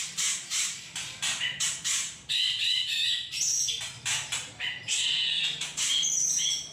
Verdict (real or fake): fake